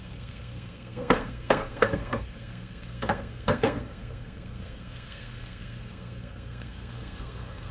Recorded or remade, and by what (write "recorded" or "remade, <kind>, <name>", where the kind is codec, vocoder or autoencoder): remade, codec, SNAC